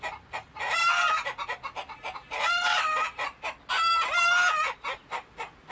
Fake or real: real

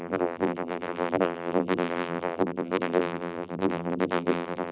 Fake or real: fake